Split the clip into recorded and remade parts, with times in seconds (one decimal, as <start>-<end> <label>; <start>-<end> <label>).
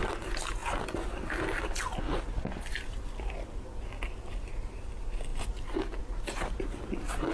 0.0-7.3 recorded